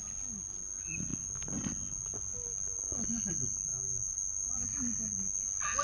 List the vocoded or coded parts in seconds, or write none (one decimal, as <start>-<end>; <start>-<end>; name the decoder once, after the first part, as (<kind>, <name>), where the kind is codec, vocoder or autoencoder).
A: none